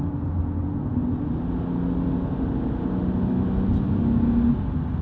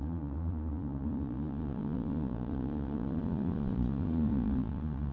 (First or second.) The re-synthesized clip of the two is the second